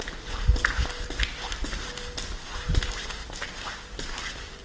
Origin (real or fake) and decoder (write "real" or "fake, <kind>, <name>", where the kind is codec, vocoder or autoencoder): real